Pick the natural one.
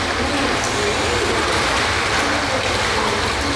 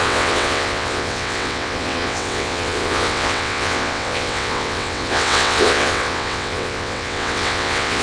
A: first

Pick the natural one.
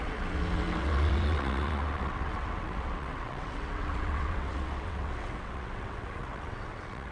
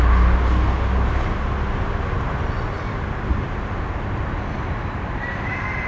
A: second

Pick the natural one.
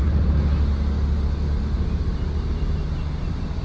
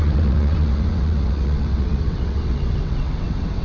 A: first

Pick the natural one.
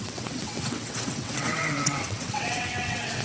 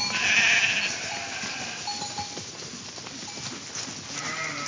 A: second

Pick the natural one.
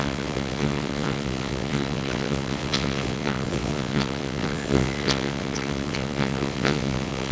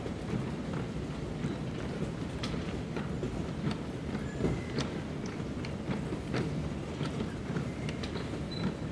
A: second